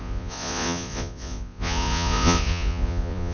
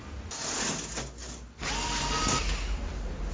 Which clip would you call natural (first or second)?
second